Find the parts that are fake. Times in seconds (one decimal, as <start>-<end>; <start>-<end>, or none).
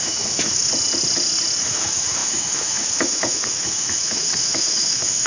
0.0-0.7; 1.7-5.3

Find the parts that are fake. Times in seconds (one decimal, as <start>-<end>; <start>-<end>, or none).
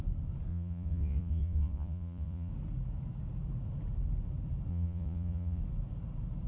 0.5-2.5; 4.7-5.6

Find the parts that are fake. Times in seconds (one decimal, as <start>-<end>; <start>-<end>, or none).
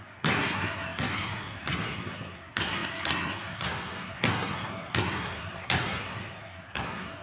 0.0-7.2